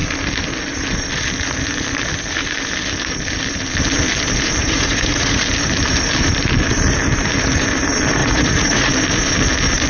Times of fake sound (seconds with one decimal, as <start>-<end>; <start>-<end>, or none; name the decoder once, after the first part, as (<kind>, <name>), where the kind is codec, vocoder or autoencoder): 4.6-5.4 (vocoder, Vocos); 8.2-8.9